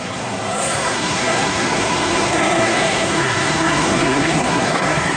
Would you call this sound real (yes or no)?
no